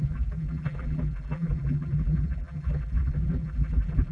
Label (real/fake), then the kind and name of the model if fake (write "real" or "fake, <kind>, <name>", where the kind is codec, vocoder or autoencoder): fake, vocoder, BigVGAN v2